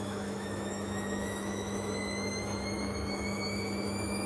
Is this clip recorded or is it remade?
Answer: remade